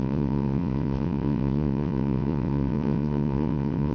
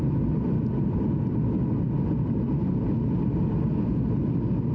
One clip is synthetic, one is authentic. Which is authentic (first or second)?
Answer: second